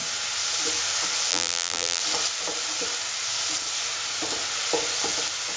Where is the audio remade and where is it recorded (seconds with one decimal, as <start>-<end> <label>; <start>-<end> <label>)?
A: 0.0-1.3 recorded; 1.3-2.0 remade; 2.0-5.6 recorded

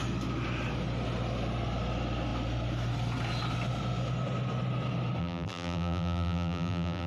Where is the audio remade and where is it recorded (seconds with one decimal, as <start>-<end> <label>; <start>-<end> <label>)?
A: 0.0-5.2 recorded; 5.2-7.1 remade

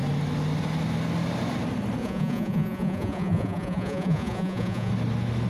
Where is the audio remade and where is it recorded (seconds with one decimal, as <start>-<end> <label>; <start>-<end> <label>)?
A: 0.0-2.0 recorded; 2.0-4.9 remade; 4.9-5.5 recorded

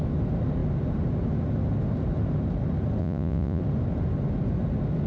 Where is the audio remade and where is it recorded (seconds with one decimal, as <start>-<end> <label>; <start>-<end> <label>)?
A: 0.0-3.0 recorded; 3.0-3.6 remade; 3.6-5.1 recorded

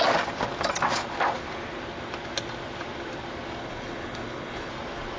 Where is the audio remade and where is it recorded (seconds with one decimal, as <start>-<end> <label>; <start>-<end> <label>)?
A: 0.0-3.6 recorded; 3.6-4.7 remade; 4.7-5.2 recorded

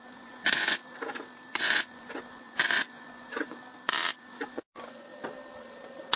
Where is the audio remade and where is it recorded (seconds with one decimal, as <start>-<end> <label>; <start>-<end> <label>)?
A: 0.0-0.8 remade; 0.8-1.5 recorded; 1.5-3.6 remade; 3.6-4.2 recorded; 4.2-5.1 remade; 5.1-6.2 recorded

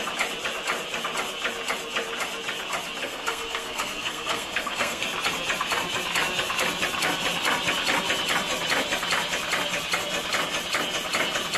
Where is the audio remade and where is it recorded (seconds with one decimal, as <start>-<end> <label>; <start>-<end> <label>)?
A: 0.0-3.0 recorded; 3.0-5.0 remade; 5.0-11.6 recorded

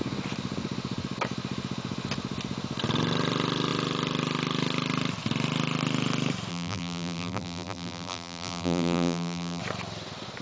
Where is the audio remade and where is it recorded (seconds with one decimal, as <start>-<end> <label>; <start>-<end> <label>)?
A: 0.0-6.5 recorded; 6.5-9.6 remade; 9.6-10.4 recorded